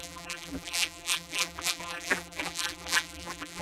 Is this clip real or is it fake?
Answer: fake